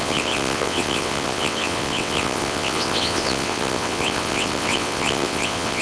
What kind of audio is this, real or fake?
fake